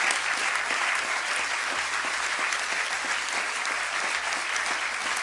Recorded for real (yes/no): yes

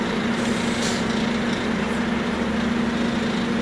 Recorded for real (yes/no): yes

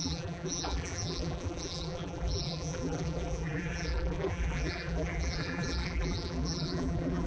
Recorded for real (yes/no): no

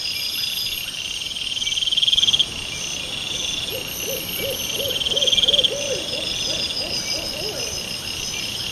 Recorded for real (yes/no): yes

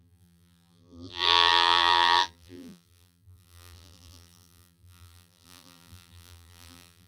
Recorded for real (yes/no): no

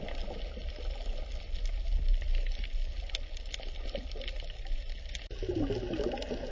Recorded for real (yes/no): yes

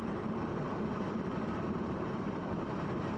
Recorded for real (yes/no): no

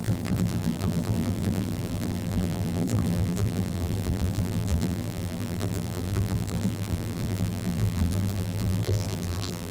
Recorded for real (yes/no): no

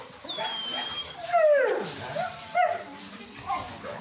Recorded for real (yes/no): yes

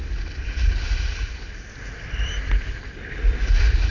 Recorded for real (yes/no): yes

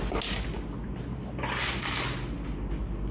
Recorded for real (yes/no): yes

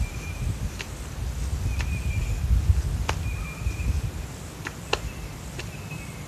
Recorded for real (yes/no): yes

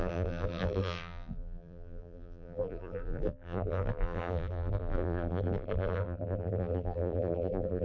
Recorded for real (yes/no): no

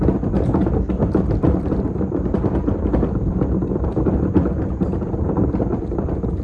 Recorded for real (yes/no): no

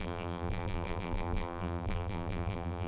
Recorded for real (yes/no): no